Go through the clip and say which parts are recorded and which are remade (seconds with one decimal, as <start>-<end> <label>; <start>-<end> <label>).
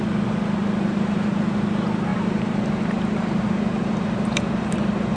0.0-0.6 recorded; 0.6-1.4 remade; 1.4-2.1 recorded; 2.1-5.2 remade